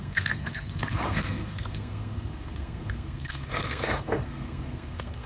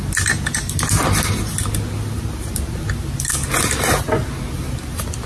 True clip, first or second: second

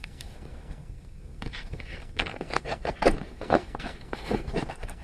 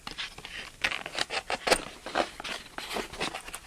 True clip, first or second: second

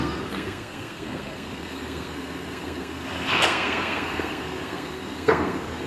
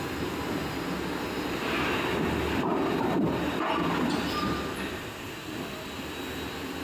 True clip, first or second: second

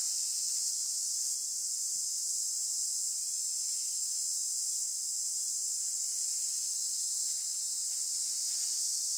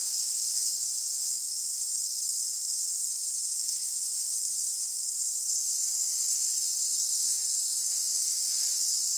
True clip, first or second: first